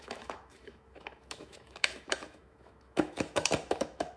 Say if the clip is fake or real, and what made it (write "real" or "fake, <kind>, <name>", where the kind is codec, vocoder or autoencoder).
fake, autoencoder, DAC-VAE